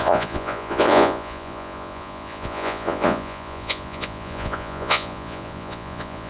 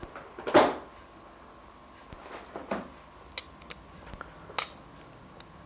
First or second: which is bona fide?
second